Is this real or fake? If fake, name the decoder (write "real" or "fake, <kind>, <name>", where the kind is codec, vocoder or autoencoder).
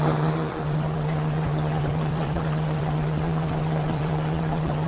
fake, vocoder, WaveNeXt